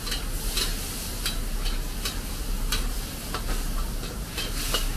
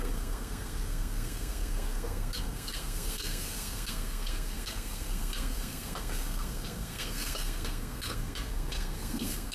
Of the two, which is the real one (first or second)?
first